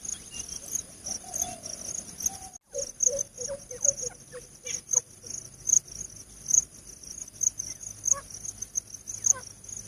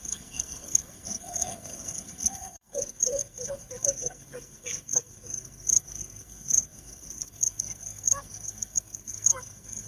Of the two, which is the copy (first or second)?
second